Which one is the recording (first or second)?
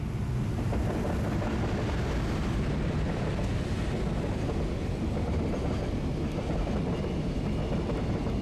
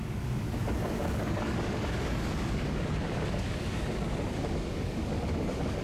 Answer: first